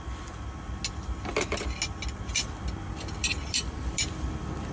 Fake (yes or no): no